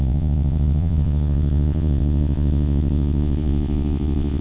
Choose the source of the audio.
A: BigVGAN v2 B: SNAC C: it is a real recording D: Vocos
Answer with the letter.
D